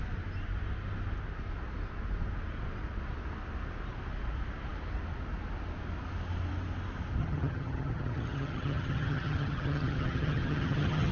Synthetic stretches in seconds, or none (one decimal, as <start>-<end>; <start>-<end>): 7.2-11.1